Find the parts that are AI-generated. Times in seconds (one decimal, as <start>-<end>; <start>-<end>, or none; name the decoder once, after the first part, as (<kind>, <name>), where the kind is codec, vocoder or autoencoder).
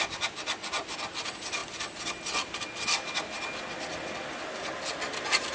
none